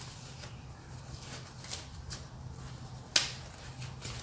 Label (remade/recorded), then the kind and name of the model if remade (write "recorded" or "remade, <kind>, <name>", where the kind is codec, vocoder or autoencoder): recorded